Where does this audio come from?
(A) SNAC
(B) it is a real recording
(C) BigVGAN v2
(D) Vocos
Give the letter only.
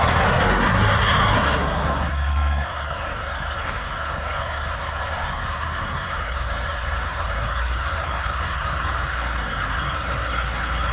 A